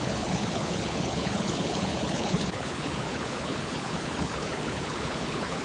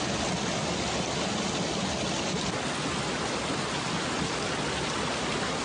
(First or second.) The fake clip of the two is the first